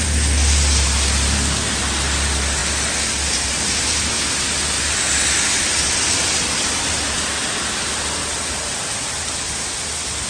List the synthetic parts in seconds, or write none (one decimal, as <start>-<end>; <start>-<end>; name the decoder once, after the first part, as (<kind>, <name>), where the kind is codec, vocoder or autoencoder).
8.2-9.1 (vocoder, BigVGAN v2)